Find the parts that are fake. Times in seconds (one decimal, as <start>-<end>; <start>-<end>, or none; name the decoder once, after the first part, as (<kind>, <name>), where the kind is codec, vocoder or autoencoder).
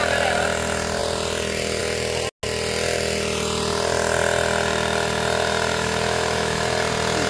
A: 5.7-6.6 (autoencoder, DAC-VAE)